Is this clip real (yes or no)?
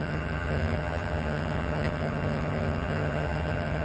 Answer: no